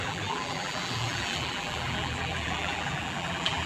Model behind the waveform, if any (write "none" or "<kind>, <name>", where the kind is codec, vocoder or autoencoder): vocoder, BigVGAN v2